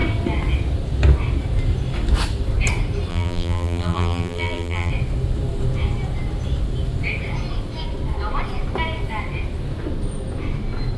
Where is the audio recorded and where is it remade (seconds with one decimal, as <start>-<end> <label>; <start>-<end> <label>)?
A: 0.0-3.1 recorded; 3.1-4.9 remade; 4.9-11.0 recorded